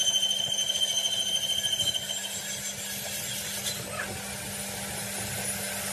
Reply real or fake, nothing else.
real